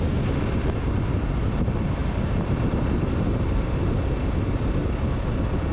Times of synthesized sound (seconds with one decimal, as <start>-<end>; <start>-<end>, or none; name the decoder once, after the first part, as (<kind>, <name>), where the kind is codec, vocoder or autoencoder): 2.0-3.8 (vocoder, BigVGAN v2)